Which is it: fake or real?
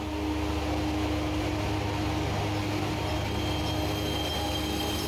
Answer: real